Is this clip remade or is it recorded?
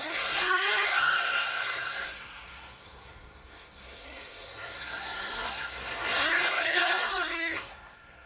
remade